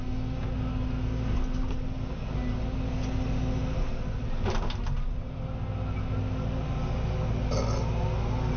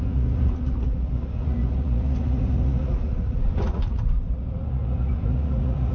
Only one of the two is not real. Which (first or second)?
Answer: second